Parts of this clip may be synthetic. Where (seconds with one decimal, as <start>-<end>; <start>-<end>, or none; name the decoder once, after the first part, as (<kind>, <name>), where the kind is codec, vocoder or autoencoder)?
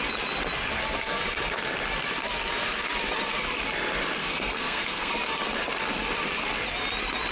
4.2-5.1 (codec, SNAC)